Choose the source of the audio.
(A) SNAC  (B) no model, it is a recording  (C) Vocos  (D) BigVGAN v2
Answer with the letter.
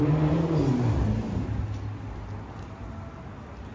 B